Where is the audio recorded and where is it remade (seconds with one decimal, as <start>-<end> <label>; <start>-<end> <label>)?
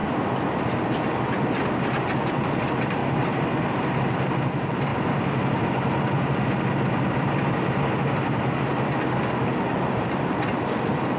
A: 0.0-2.3 recorded; 2.3-3.0 remade; 3.0-3.7 recorded; 3.7-4.9 remade; 4.9-9.6 recorded; 9.6-11.2 remade